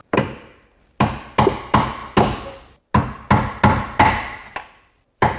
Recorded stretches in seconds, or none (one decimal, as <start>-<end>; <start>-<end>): 0.0-5.4